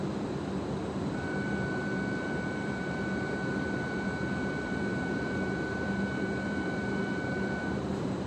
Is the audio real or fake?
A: fake